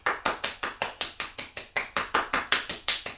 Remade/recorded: remade